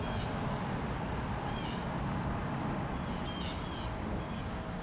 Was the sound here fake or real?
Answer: real